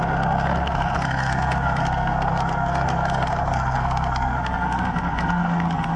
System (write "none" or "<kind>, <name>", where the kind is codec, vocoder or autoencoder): codec, SNAC